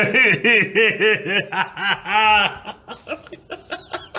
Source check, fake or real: real